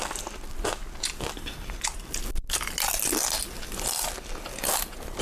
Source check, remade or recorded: recorded